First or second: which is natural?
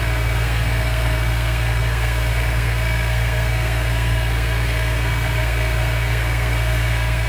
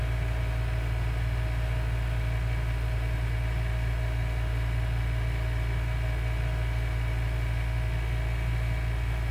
second